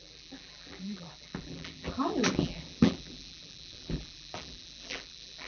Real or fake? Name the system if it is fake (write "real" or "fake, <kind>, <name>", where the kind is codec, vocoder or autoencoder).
fake, vocoder, BigVGAN v2